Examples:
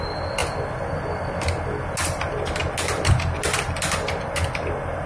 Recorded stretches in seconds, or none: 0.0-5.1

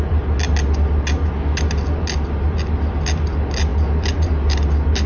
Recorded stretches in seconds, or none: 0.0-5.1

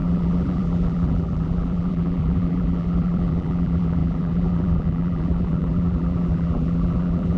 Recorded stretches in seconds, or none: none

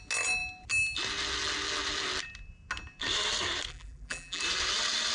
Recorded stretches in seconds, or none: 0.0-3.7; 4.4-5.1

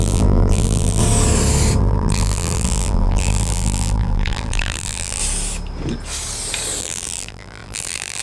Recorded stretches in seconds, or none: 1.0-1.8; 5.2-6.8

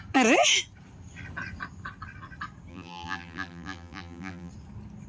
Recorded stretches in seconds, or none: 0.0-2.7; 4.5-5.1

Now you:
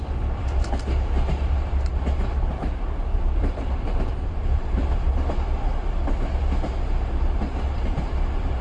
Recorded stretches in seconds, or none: 0.0-3.1; 4.9-8.6